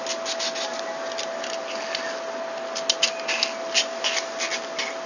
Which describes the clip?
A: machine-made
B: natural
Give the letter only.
B